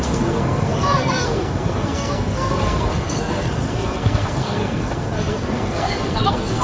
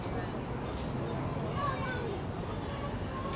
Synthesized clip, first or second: first